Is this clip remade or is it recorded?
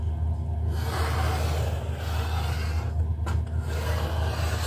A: recorded